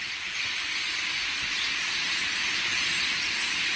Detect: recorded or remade recorded